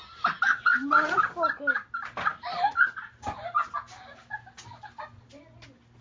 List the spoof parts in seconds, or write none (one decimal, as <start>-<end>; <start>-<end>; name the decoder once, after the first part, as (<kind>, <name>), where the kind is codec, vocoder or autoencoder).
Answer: 0.5-1.2 (vocoder, WaveNeXt)